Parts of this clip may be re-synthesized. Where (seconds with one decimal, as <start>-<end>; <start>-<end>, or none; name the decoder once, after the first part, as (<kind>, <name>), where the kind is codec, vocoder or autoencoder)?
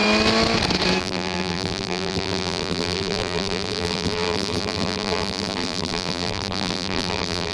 1.0-7.5 (vocoder, BigVGAN v2)